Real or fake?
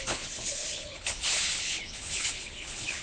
fake